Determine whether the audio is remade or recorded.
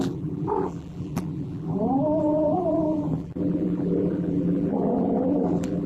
remade